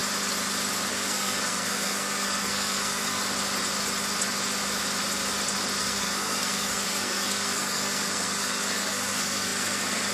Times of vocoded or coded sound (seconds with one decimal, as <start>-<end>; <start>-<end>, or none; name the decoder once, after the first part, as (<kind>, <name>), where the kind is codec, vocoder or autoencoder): 0.9-3.2 (codec, SNAC); 5.8-10.1